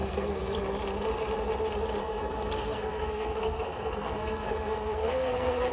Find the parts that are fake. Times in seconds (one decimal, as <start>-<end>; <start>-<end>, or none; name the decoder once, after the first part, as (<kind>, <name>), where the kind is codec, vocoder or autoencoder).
0.0-0.6 (codec, SNAC); 2.0-5.7